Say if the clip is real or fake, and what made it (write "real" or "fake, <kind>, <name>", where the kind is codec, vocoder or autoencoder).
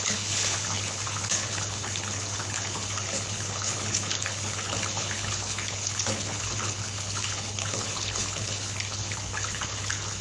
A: fake, codec, HILCodec